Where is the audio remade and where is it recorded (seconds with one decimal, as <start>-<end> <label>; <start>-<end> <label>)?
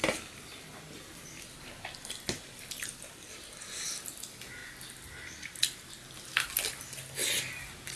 0.0-8.0 recorded